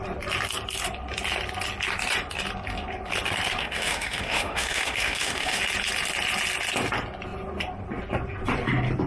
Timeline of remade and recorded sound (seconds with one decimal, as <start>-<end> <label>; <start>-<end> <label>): 0.0-3.6 recorded; 3.6-5.6 remade; 5.6-9.1 recorded